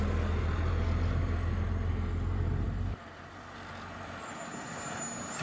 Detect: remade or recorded recorded